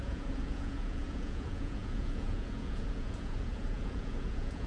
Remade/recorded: remade